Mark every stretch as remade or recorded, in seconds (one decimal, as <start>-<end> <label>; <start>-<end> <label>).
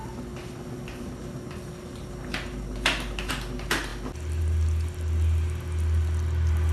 0.0-6.7 recorded